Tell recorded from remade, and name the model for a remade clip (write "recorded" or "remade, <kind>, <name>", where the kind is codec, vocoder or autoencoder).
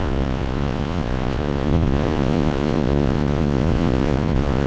remade, vocoder, Vocos